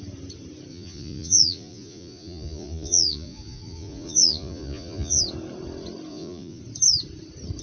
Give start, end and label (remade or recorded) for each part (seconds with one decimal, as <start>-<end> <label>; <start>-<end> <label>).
0.0-0.7 recorded; 0.7-5.2 remade; 5.2-6.1 recorded; 6.1-6.6 remade; 6.6-7.6 recorded